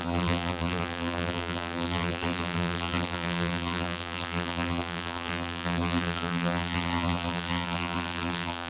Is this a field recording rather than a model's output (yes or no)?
no